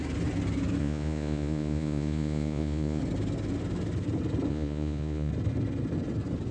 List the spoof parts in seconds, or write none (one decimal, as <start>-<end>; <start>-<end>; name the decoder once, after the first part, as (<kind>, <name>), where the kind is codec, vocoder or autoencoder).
0.8-3.0 (vocoder, Vocos); 4.5-5.3